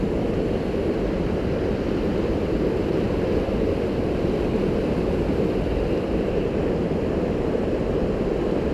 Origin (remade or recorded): recorded